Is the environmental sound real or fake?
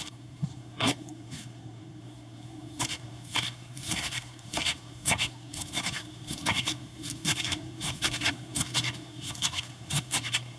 fake